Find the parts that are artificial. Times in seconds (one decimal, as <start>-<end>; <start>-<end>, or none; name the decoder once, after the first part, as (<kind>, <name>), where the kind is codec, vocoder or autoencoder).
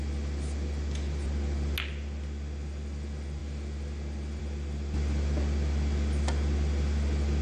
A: none